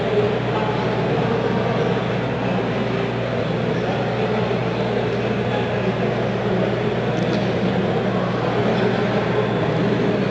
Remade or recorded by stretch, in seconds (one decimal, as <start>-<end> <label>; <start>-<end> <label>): 0.0-10.3 recorded